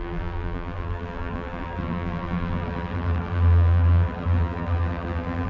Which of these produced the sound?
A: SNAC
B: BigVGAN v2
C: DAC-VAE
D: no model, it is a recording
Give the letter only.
B